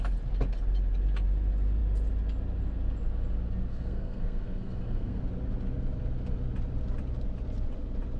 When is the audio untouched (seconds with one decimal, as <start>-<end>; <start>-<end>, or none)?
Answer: 0.0-3.7; 5.2-8.2